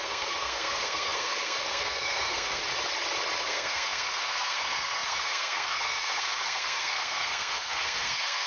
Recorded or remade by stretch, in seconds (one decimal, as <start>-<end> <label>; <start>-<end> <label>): 0.0-2.6 remade; 2.6-3.4 recorded; 3.4-8.5 remade